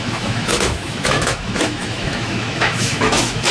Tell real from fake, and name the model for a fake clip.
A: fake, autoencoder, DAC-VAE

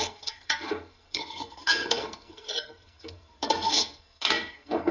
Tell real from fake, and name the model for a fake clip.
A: fake, codec, SNAC